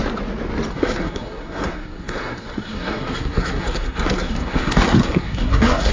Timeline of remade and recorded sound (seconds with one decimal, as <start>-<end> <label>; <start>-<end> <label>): 0.0-0.7 recorded; 0.7-5.9 remade